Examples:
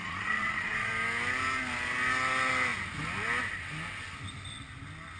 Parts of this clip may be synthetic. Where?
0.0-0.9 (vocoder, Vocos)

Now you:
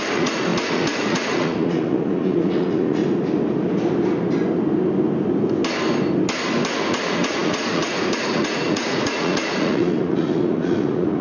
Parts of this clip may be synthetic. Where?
0.0-3.0 (vocoder, Vocos); 6.7-11.2

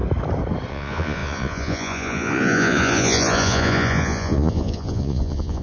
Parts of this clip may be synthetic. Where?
0.7-5.6 (vocoder, Vocos)